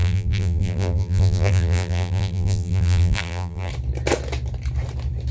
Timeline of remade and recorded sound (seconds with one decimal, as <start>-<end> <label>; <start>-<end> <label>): 0.0-3.7 remade; 3.7-5.3 recorded